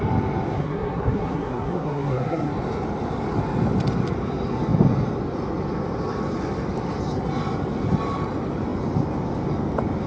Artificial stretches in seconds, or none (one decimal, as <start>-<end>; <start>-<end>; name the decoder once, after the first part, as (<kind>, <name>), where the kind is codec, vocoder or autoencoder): 0.5-2.5 (codec, SNAC)